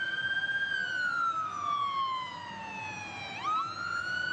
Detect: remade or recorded recorded